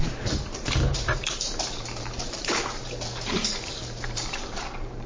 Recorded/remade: remade